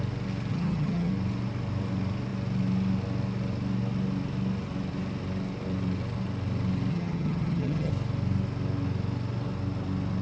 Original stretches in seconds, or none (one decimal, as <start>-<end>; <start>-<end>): 0.0-0.5; 1.1-6.9; 7.9-10.2